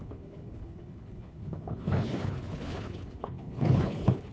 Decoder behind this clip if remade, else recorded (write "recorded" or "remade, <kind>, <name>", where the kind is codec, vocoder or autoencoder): remade, codec, HILCodec